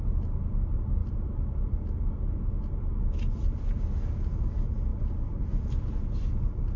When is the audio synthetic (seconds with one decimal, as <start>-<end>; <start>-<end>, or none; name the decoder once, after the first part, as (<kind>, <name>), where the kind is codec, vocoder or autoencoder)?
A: none